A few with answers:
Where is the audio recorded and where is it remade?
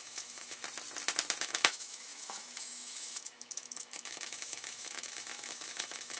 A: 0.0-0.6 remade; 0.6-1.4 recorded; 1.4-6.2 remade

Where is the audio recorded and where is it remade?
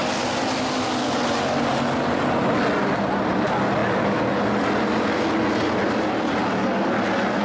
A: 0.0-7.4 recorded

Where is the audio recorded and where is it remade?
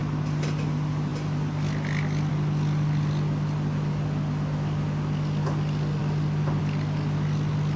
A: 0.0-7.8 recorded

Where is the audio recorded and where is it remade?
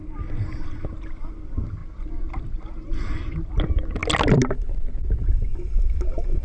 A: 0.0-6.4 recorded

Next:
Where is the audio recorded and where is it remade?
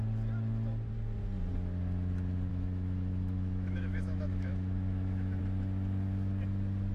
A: 0.0-2.5 recorded; 2.5-5.4 remade; 5.4-6.9 recorded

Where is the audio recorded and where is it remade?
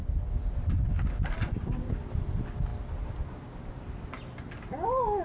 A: 0.0-5.2 recorded